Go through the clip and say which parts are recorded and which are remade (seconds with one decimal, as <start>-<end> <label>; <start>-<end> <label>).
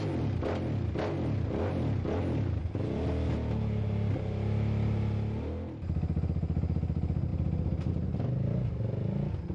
0.0-9.5 recorded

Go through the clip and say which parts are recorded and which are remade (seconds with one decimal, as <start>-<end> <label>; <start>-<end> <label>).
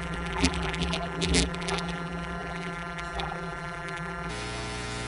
0.0-4.3 remade; 4.3-5.1 recorded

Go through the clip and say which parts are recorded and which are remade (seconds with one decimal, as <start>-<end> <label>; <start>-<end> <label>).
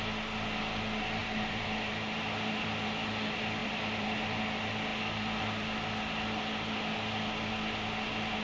0.0-1.2 recorded; 1.2-1.9 remade; 1.9-3.6 recorded; 3.6-4.4 remade; 4.4-8.4 recorded